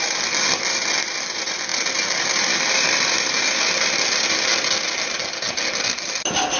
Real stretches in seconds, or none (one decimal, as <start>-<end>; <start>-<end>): 0.0-6.6